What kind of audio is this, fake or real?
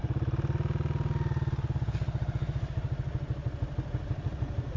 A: real